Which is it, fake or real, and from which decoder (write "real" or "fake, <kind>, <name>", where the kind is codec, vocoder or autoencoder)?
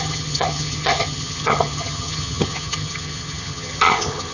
fake, vocoder, HiFi-GAN